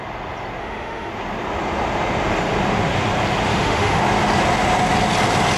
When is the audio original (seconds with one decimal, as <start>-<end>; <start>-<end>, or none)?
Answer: 0.0-0.6; 1.1-3.5; 4.0-5.6